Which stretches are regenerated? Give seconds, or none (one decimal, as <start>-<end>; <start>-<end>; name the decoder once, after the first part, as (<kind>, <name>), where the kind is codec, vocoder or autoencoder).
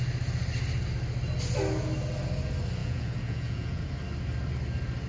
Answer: 2.8-3.8 (vocoder, Vocos)